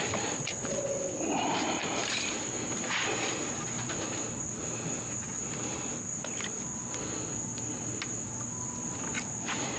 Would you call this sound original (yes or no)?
yes